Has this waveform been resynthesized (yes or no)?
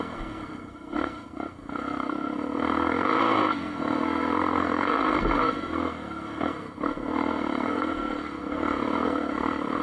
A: yes